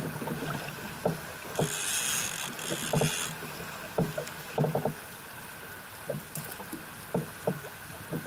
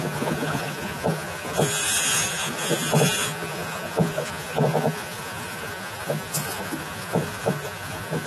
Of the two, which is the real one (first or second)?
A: first